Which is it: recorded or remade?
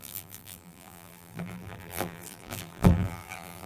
remade